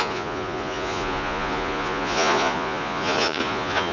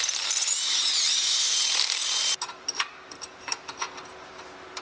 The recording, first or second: second